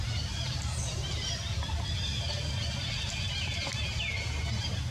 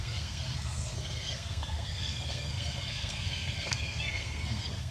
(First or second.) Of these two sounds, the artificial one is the second